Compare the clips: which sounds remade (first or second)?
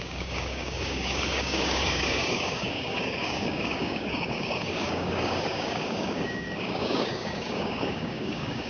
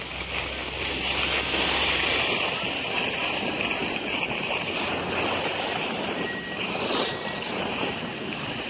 first